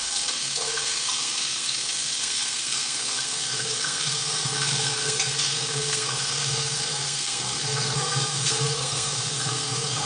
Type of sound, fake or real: fake